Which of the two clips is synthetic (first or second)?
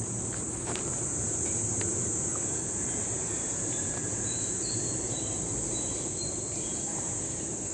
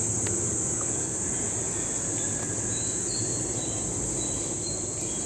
first